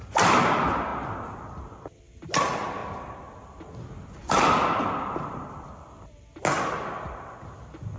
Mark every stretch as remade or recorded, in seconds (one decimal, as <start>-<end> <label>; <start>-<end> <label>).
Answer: 0.0-0.9 recorded; 0.9-2.0 remade; 2.0-4.2 recorded; 4.2-5.7 remade; 5.7-8.0 recorded